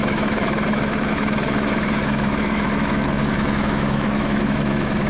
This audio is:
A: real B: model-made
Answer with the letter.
B